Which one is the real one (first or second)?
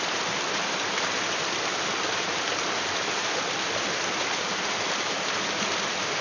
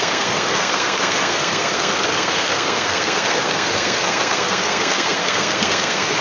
first